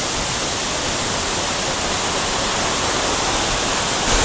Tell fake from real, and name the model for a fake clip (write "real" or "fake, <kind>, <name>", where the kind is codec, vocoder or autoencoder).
real